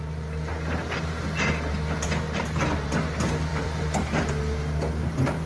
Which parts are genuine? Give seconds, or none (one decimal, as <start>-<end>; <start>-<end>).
0.0-3.5; 4.3-5.5